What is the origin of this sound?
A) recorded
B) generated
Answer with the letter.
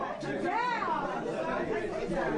A